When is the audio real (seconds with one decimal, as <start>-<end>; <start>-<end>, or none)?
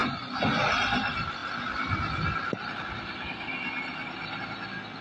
0.6-5.0